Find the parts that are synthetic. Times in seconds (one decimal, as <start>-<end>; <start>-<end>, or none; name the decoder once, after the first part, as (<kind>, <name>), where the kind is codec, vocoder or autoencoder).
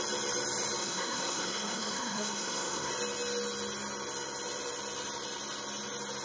0.8-2.9 (codec, SNAC)